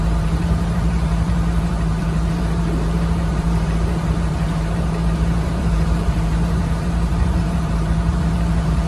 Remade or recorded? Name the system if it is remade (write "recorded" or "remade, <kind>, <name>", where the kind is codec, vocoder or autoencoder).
remade, vocoder, BigVGAN v2